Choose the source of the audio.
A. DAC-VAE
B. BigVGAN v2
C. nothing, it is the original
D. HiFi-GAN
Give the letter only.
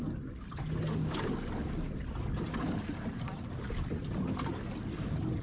C